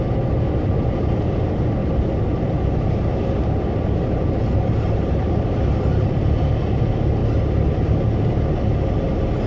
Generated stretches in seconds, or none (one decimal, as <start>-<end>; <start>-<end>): 1.8-6.8